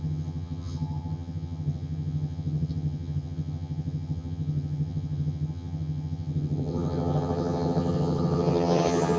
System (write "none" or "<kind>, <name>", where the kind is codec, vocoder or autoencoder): vocoder, HiFi-GAN